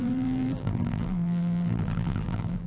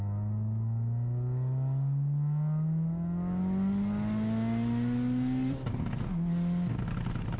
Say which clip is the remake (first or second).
first